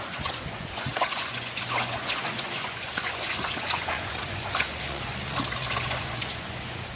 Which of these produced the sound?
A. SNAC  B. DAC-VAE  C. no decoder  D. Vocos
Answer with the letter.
D